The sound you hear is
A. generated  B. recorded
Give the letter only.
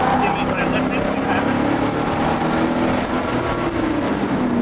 B